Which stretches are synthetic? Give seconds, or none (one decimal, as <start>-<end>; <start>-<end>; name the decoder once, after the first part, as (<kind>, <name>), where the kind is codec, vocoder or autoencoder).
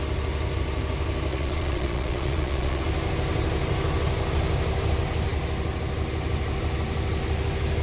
1.3-2.8 (vocoder, Vocos)